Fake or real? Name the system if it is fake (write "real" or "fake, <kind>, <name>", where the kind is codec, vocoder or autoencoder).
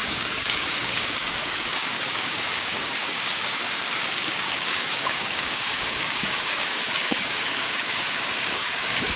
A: fake, codec, DAC